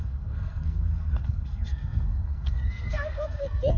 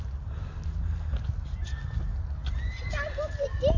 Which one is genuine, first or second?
second